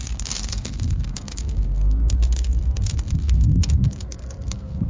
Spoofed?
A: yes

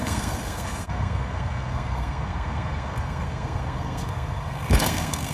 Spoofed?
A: yes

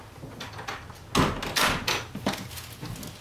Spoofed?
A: no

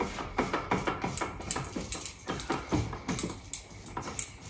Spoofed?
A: no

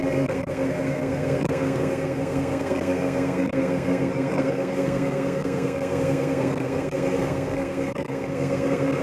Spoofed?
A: yes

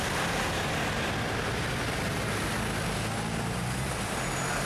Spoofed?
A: no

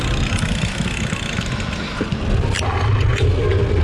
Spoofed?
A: no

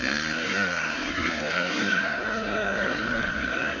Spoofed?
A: yes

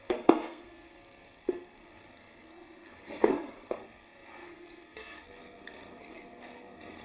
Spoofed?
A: yes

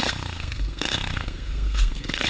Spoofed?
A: yes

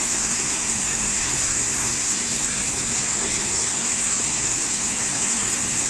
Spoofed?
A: yes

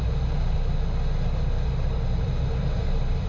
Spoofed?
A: no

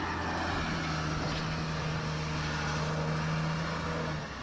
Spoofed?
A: no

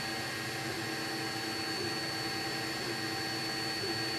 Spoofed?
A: no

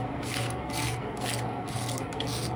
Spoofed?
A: yes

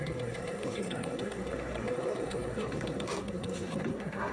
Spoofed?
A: yes